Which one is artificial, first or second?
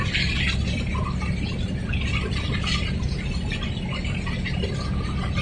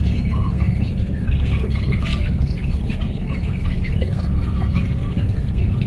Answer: second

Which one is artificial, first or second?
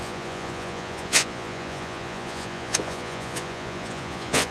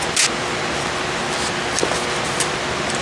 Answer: first